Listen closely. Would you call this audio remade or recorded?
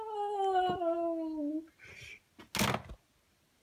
recorded